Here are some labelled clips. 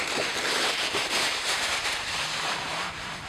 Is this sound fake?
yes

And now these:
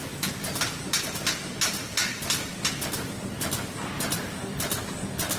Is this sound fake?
no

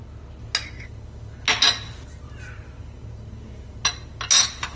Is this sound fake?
no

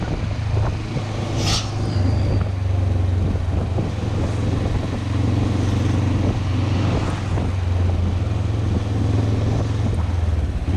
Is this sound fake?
no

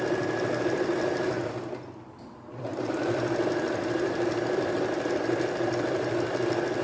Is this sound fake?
yes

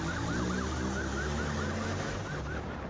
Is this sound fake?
no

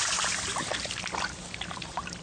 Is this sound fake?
no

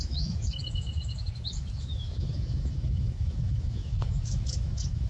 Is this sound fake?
yes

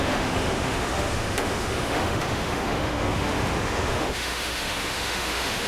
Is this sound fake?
yes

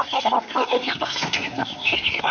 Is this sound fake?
yes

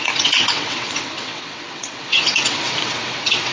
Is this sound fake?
yes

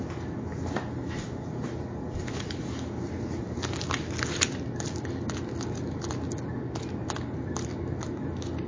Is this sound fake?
no